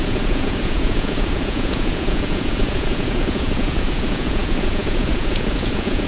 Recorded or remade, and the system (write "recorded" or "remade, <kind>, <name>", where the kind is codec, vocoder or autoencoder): remade, vocoder, Vocos